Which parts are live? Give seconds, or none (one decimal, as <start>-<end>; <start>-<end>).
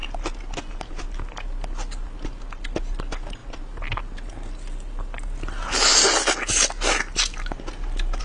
0.0-8.2